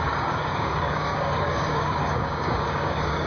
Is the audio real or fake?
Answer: fake